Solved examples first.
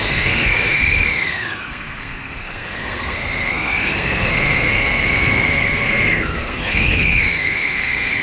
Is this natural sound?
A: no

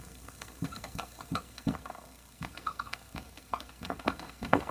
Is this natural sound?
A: no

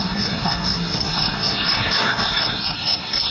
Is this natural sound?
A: no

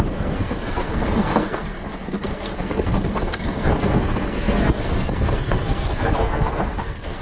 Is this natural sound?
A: no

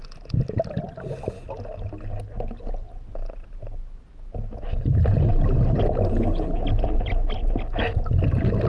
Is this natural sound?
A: yes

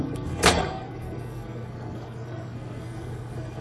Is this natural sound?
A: no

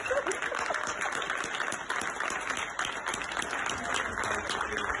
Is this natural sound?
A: yes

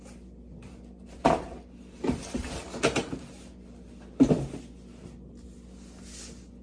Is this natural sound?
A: yes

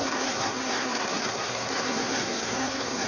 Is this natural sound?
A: no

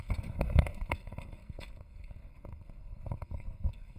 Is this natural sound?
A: no